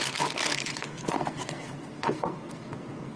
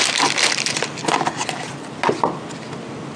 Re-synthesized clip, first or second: first